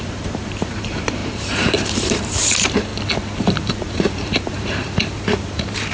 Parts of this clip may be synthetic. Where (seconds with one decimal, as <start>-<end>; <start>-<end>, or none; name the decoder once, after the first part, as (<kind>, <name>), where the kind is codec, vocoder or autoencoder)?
0.0-2.9 (vocoder, BigVGAN v2); 3.4-5.9